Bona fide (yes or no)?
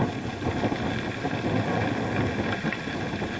yes